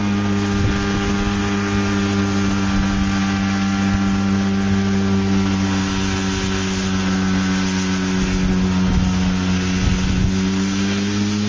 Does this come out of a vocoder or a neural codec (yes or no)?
no